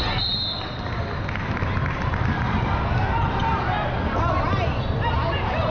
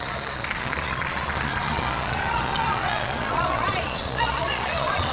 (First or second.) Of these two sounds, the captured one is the first